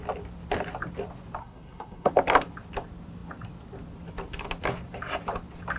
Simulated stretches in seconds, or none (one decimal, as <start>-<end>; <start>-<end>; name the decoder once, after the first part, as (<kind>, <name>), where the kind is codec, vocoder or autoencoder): 1.4-2.1 (codec, SNAC)